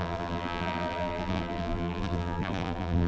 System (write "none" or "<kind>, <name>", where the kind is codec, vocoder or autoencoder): vocoder, BigVGAN v2